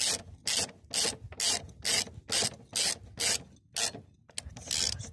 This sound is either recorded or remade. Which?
recorded